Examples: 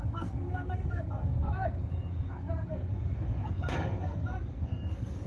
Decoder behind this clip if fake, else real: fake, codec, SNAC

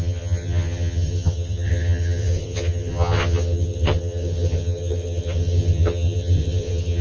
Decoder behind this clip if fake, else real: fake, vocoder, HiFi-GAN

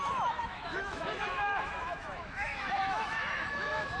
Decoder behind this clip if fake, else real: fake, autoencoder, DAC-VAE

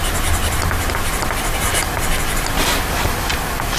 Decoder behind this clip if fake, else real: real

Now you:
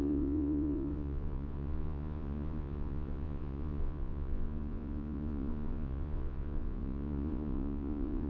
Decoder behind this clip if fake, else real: fake, vocoder, Vocos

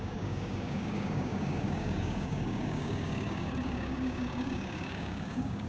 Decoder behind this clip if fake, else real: fake, codec, DAC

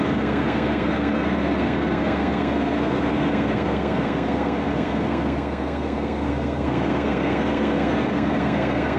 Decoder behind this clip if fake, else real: fake, codec, SNAC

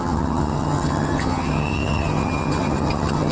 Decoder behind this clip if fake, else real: fake, vocoder, HiFi-GAN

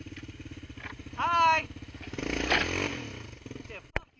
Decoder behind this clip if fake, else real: real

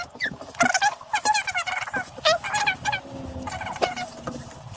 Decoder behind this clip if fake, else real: real